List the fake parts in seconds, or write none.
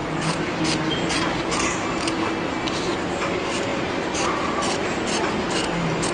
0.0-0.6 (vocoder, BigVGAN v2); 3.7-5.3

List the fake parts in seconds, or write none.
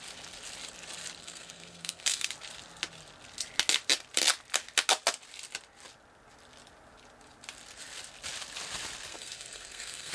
1.2-2.3 (codec, SNAC); 9.1-10.1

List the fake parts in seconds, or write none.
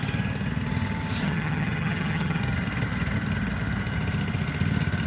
1.2-2.4 (vocoder, HiFi-GAN)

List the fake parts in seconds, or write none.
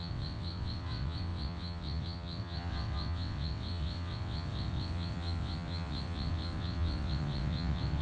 0.0-8.0 (vocoder, WaveNeXt)